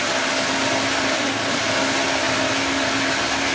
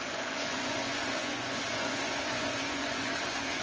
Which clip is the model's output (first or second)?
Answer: second